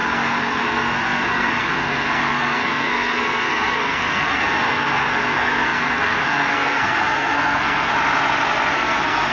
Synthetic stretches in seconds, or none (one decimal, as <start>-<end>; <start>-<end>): 0.0-7.9; 8.7-9.3